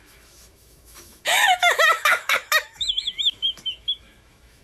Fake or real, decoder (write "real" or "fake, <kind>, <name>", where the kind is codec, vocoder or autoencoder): fake, autoencoder, DAC-VAE